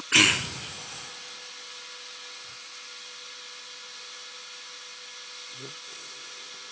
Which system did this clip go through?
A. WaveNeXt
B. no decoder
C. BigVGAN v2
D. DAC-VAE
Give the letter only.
B